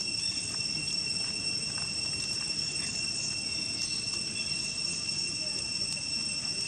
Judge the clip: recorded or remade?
recorded